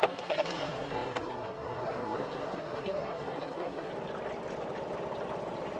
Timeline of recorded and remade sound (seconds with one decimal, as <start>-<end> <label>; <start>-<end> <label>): 0.0-3.9 remade; 3.9-5.8 recorded